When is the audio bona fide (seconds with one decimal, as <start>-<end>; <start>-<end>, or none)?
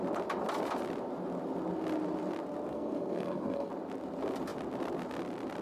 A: 0.0-2.7; 3.7-5.6